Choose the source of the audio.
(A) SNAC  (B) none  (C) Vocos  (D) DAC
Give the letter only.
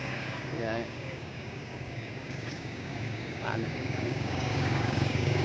D